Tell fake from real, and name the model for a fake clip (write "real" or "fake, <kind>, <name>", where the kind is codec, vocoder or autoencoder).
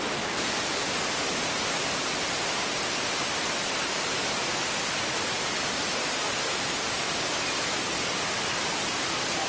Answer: real